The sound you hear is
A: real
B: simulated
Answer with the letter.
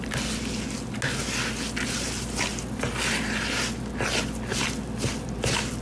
A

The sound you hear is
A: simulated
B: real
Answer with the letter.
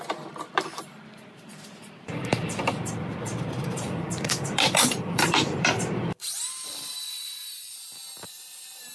A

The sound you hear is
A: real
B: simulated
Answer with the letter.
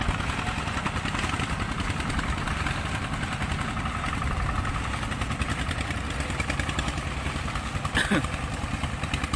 A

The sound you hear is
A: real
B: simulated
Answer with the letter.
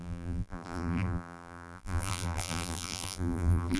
B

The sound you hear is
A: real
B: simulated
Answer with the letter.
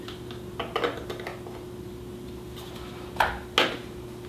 A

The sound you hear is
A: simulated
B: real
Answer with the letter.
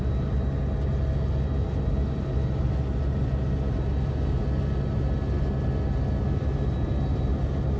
B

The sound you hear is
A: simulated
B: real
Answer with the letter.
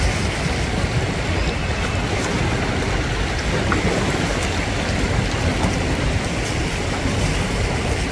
B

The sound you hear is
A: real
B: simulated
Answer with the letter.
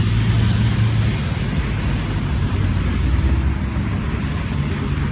A